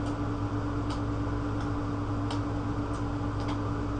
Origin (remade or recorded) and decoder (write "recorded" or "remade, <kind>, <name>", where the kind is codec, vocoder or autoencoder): recorded